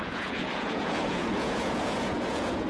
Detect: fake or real fake